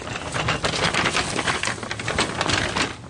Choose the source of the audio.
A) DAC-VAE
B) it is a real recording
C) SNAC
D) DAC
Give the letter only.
B